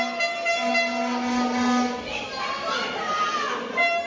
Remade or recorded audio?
recorded